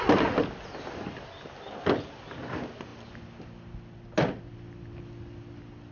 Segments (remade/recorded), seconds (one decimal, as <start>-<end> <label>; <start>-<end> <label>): 0.0-5.9 recorded